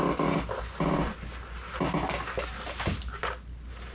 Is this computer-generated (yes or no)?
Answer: no